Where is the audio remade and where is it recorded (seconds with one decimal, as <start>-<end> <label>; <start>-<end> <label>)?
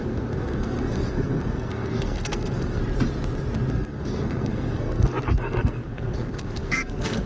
0.0-2.8 remade; 2.8-3.7 recorded; 3.7-7.3 remade